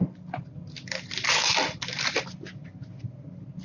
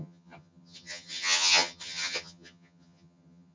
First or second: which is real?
first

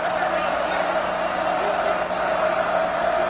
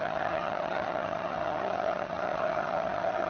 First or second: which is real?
first